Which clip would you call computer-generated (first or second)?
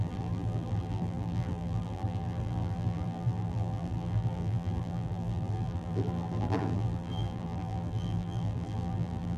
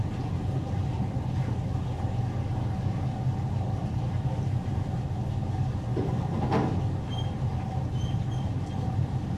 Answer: first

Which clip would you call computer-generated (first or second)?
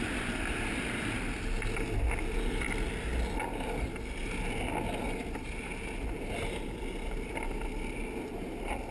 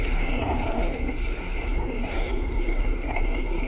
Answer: second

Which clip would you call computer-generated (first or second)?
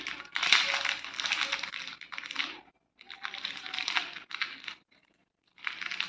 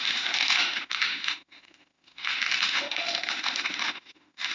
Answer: second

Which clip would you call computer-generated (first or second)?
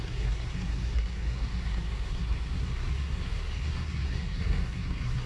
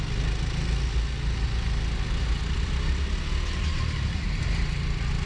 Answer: first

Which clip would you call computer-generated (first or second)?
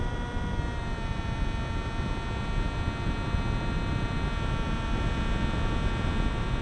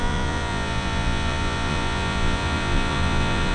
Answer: second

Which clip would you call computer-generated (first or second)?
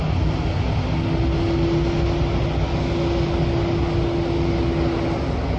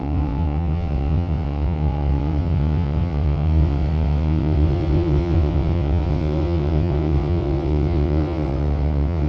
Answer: second